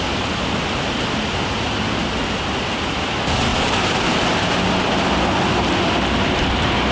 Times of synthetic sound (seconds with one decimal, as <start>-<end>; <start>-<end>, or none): none